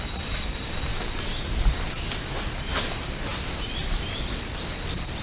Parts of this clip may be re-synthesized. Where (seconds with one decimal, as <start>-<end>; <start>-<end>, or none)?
none